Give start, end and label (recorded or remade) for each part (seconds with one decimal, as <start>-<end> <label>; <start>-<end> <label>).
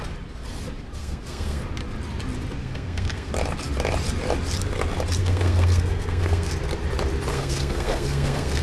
0.0-1.0 recorded; 1.0-1.6 remade; 1.6-2.6 recorded; 2.6-3.3 remade; 3.3-5.2 recorded; 5.2-6.5 remade; 6.5-7.3 recorded; 7.3-8.6 remade